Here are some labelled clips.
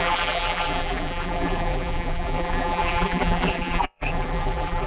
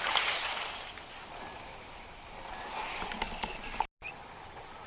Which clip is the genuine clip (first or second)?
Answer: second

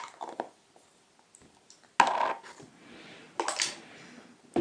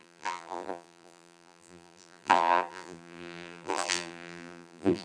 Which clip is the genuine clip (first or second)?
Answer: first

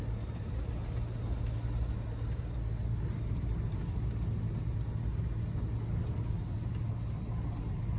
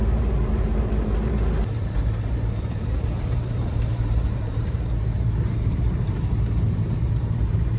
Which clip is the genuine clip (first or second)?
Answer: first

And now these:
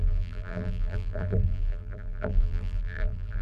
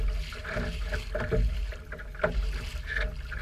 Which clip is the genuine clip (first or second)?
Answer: second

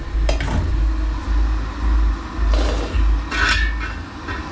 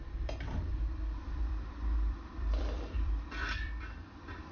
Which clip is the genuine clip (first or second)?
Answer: first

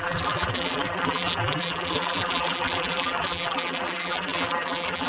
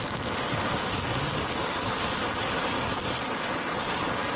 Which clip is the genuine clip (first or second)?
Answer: second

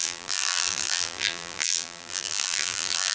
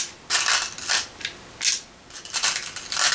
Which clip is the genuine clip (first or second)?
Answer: second